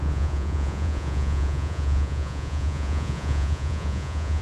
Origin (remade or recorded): remade